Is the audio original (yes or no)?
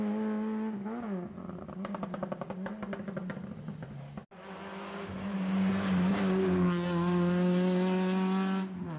yes